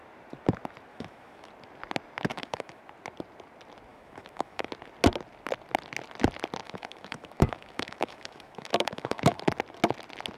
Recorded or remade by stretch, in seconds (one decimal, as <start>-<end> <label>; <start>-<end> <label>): 0.0-0.9 recorded; 0.9-1.5 remade; 1.5-2.3 recorded; 2.3-2.8 remade; 2.8-3.9 recorded; 3.9-4.7 remade; 4.7-6.6 recorded; 6.6-9.4 remade; 9.4-10.4 recorded

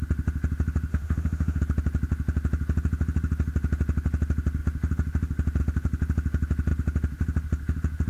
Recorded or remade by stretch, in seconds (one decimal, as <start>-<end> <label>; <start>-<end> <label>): 0.0-0.9 recorded; 0.9-1.6 remade; 1.6-8.1 recorded

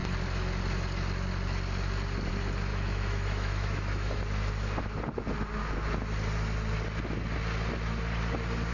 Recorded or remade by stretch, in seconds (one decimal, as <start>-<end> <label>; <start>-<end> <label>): 0.0-2.7 recorded; 2.7-4.2 remade; 4.2-8.7 recorded

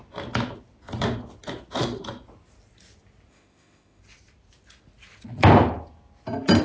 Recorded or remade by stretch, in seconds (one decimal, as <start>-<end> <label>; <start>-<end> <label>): 0.0-3.3 recorded; 3.3-4.0 remade; 4.0-6.6 recorded

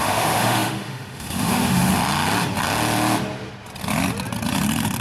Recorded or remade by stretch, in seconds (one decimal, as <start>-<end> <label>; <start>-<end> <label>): 0.0-1.9 remade; 1.9-5.0 recorded

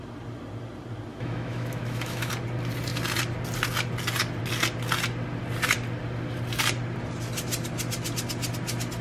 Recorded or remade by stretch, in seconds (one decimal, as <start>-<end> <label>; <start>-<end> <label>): 0.0-1.1 recorded; 1.1-2.3 remade; 2.3-9.0 recorded

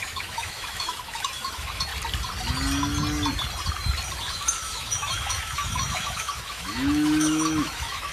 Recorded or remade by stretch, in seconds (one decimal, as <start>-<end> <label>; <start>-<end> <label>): 0.0-1.9 remade; 1.9-4.2 recorded; 4.2-8.1 remade